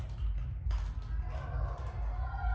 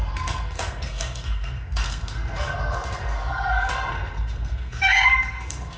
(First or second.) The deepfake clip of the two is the second